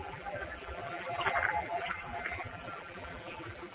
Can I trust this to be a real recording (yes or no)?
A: no